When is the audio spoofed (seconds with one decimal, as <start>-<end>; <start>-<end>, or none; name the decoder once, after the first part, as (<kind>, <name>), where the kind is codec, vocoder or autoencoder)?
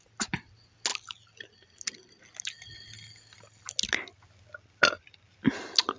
none